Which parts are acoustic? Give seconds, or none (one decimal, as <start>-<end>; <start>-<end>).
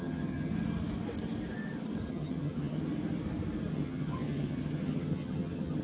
0.5-2.1; 2.9-3.7